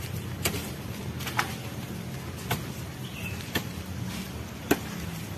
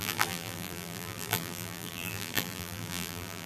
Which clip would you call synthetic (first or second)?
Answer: second